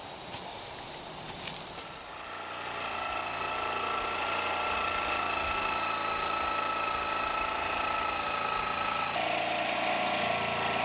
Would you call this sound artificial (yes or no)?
no